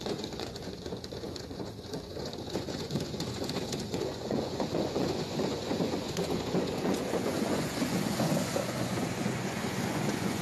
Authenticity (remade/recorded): remade